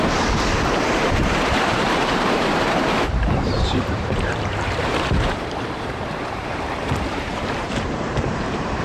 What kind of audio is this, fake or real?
fake